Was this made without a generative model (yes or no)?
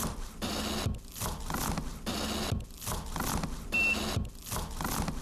yes